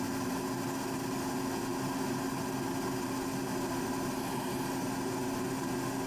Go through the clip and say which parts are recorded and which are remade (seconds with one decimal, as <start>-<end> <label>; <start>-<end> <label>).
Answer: 0.0-6.1 recorded